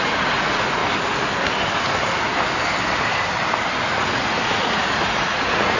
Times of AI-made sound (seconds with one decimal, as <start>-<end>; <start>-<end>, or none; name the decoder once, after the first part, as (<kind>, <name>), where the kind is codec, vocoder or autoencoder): 0.0-0.8 (vocoder, Vocos); 3.8-5.8